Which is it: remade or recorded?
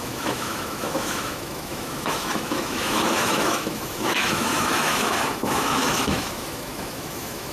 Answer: remade